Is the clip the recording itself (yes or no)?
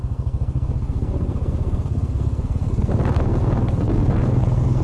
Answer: no